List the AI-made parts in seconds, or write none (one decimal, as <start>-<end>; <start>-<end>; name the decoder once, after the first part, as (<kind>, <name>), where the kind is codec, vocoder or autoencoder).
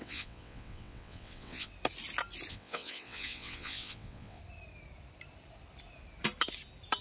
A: 0.0-1.7 (vocoder, WaveNeXt); 2.5-4.4